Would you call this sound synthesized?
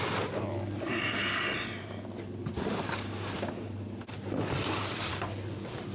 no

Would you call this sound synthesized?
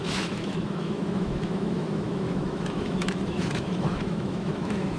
yes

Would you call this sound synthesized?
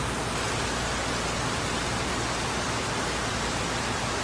no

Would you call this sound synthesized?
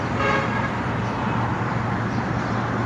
no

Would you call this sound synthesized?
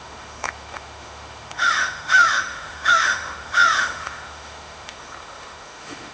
yes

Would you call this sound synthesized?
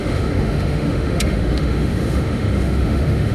yes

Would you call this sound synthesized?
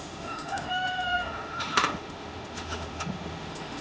yes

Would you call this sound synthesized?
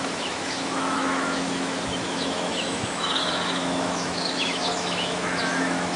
yes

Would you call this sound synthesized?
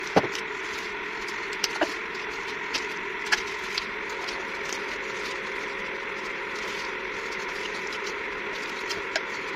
no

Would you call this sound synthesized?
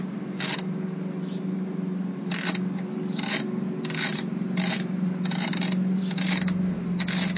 no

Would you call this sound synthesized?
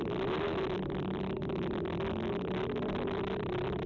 no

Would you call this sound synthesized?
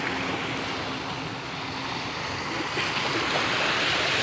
no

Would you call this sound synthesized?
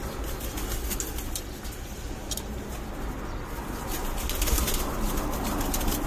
no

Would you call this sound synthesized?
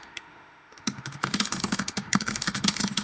yes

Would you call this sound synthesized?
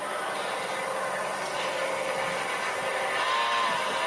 no